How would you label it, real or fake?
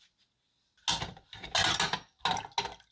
real